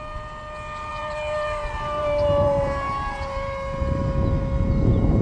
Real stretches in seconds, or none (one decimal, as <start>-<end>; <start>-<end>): 0.0-0.9; 4.0-5.2